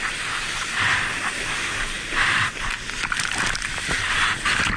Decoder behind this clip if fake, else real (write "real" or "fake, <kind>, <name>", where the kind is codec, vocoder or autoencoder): real